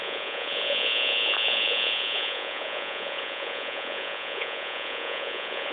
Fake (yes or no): yes